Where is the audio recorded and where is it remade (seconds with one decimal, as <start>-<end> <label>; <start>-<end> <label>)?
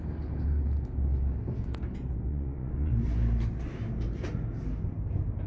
0.0-2.3 recorded; 2.3-2.9 remade; 2.9-5.5 recorded